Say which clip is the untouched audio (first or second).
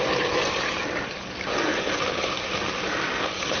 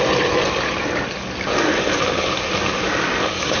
second